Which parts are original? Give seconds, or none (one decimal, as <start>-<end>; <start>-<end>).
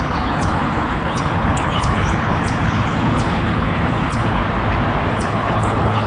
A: 4.4-5.1